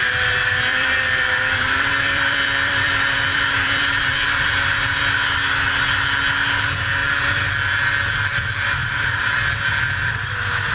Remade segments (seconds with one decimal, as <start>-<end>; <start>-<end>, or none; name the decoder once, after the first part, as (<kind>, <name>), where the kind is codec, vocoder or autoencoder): 0.7-5.0 (vocoder, BigVGAN v2)